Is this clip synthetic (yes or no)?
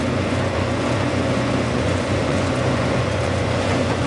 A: yes